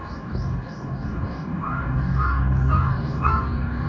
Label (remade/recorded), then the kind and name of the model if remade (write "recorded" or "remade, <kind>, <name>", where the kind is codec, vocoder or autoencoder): remade, codec, DAC